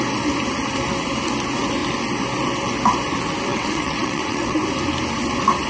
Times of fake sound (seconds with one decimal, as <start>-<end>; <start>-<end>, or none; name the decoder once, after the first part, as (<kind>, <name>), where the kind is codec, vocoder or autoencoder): 3.5-4.6 (vocoder, WaveNeXt)